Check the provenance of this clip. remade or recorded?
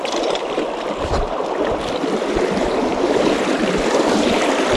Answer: remade